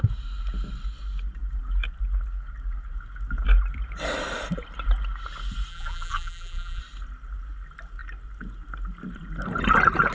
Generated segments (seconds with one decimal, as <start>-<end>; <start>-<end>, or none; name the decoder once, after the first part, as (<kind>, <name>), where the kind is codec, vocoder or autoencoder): 5.7-6.8 (vocoder, BigVGAN v2)